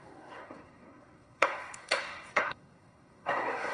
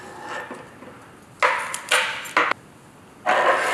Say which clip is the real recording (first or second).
second